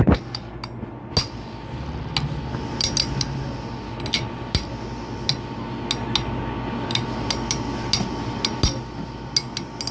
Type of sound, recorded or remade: recorded